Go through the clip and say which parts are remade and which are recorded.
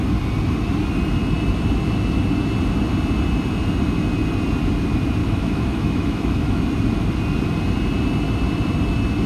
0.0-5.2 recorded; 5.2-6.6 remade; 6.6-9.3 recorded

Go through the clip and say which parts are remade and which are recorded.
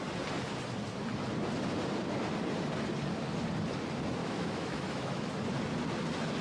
0.0-4.2 recorded; 4.2-5.3 remade; 5.3-6.4 recorded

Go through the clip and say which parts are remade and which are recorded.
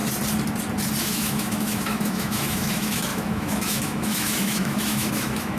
0.0-1.0 recorded; 1.0-5.6 remade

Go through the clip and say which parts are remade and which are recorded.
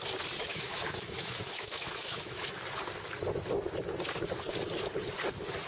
0.0-0.5 recorded; 0.5-2.5 remade; 2.5-5.7 recorded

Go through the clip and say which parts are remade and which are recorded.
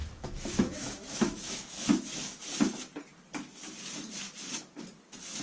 0.0-2.4 remade; 2.4-5.4 recorded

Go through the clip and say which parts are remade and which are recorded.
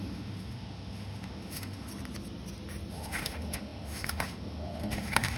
0.0-1.9 remade; 1.9-2.9 recorded; 2.9-5.4 remade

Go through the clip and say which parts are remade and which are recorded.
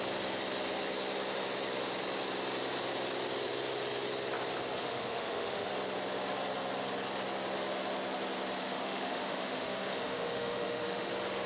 0.0-4.8 recorded; 4.8-5.7 remade; 5.7-8.6 recorded; 8.6-11.1 remade; 11.1-11.5 recorded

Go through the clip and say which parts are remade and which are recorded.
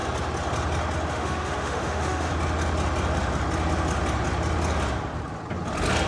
0.0-1.1 recorded; 1.1-2.3 remade; 2.3-6.1 recorded